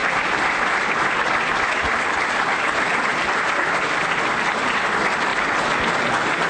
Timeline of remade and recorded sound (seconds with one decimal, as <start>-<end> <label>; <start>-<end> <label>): 0.0-6.5 recorded